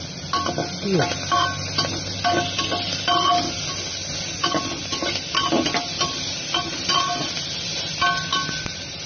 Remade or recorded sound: recorded